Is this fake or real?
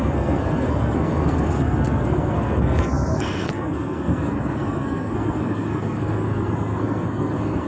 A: fake